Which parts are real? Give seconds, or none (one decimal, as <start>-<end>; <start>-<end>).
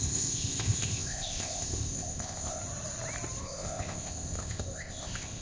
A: 2.6-3.4